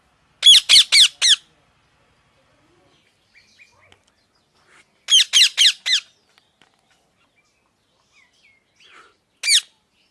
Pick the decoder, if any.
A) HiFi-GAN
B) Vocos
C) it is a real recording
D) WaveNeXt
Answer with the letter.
C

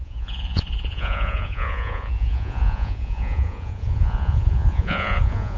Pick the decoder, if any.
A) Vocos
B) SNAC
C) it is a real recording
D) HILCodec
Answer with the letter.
A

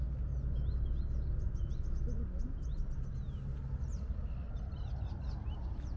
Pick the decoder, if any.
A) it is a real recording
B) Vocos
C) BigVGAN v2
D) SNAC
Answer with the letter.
A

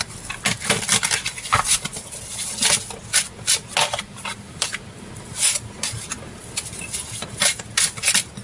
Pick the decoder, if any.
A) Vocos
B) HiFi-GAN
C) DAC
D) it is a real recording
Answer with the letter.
D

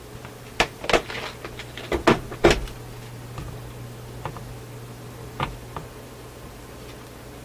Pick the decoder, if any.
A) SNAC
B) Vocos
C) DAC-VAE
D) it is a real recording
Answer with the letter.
D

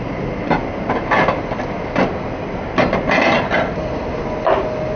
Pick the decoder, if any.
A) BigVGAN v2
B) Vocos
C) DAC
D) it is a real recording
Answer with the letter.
D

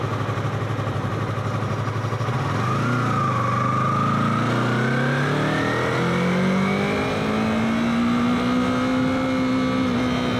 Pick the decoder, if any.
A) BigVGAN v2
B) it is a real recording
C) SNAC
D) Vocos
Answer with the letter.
B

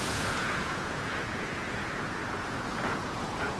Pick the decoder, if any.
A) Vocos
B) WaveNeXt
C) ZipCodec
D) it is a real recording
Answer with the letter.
A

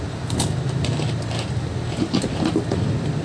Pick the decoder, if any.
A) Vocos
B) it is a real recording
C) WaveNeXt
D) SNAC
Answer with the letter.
B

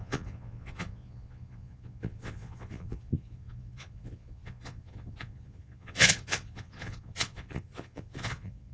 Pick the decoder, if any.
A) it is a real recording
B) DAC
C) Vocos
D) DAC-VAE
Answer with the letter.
C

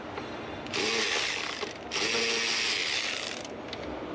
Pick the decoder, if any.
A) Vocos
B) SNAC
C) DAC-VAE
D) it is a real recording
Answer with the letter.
D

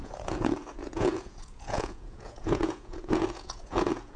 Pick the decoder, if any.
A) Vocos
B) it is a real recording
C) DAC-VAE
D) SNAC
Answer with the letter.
A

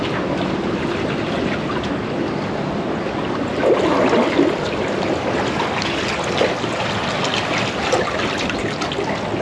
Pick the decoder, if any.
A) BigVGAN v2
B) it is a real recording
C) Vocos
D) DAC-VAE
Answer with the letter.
B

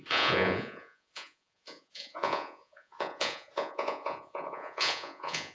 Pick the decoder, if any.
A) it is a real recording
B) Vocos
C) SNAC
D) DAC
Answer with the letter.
B